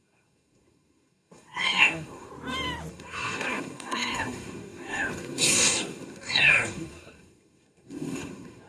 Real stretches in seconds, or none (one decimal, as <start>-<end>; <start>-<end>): 2.3-2.9